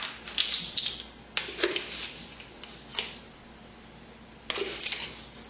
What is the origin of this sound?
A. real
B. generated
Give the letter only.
A